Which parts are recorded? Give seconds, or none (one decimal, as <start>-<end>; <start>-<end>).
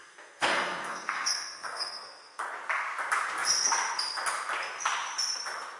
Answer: 2.4-5.8